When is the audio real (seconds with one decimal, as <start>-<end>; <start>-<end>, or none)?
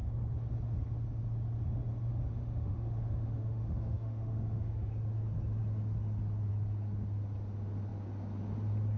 0.0-2.1; 4.9-9.0